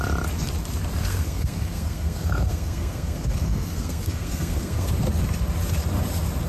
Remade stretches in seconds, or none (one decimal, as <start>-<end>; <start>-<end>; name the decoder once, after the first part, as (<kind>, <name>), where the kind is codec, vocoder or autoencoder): 1.0-4.9 (codec, SNAC)